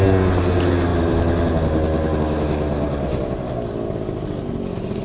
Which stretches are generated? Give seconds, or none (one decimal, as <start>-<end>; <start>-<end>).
none